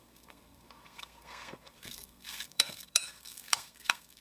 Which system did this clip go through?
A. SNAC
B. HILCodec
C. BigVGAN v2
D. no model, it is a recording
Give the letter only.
A